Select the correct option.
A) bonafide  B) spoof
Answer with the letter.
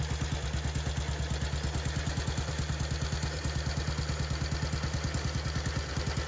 A